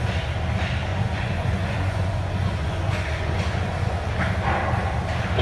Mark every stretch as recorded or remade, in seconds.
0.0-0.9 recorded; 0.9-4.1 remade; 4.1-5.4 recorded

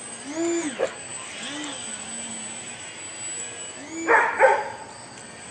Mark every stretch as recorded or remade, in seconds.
0.0-5.5 recorded

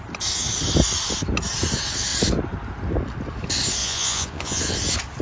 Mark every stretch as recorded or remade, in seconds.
0.0-3.8 recorded; 3.8-4.6 remade; 4.6-5.2 recorded

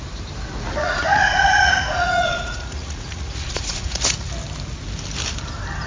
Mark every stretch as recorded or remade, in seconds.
0.0-0.8 recorded; 0.8-4.3 remade; 4.3-5.9 recorded